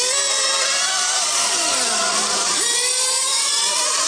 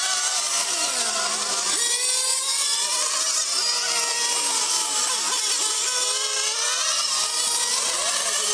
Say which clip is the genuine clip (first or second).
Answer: second